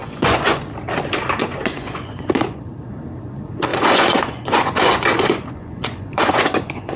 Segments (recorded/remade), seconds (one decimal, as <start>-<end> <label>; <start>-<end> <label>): 0.0-0.6 remade; 0.6-1.4 recorded; 1.4-2.6 remade; 2.6-3.7 recorded; 3.7-7.0 remade

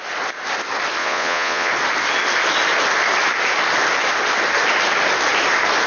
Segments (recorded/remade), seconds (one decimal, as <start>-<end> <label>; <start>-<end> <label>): 0.0-1.0 recorded; 1.0-1.7 remade; 1.7-5.9 recorded

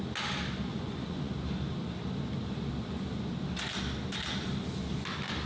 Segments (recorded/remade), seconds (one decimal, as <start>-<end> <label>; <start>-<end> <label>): 0.0-0.7 recorded; 0.7-1.3 remade; 1.3-5.5 recorded